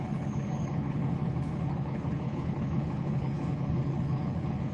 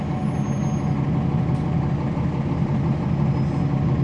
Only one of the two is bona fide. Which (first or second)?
second